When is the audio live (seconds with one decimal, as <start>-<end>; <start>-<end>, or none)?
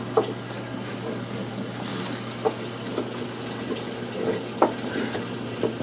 0.0-0.9; 1.5-5.8